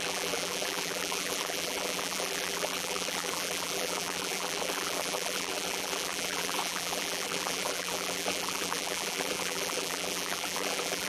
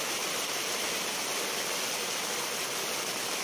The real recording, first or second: second